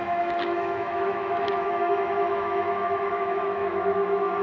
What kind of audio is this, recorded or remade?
remade